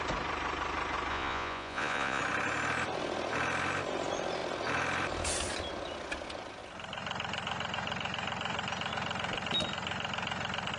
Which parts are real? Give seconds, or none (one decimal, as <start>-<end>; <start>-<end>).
0.0-1.1; 2.2-10.8